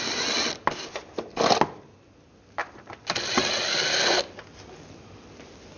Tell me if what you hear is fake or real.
real